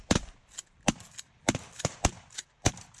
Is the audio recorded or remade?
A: remade